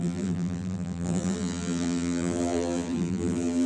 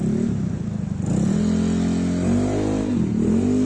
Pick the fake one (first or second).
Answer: first